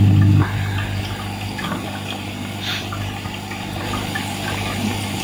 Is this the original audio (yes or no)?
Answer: yes